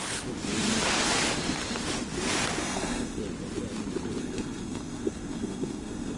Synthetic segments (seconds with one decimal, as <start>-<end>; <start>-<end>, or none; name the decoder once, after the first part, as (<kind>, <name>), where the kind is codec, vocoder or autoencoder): 2.6-3.2 (codec, SNAC); 4.2-6.2